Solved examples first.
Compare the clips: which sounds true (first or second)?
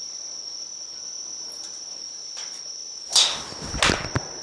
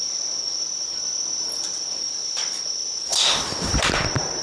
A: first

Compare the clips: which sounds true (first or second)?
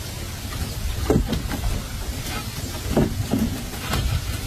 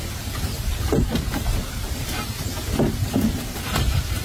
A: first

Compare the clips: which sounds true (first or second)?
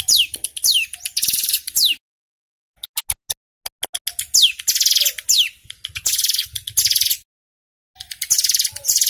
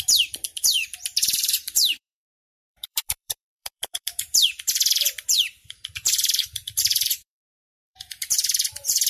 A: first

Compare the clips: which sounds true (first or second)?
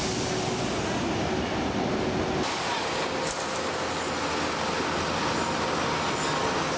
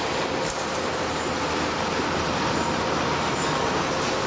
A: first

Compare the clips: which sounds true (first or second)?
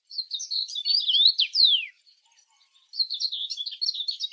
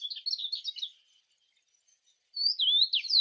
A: second